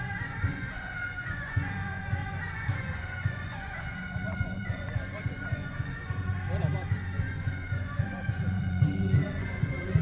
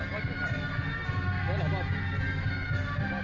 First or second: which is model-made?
first